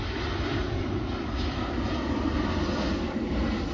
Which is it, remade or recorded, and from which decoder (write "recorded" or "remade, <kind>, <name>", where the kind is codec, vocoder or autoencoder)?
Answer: recorded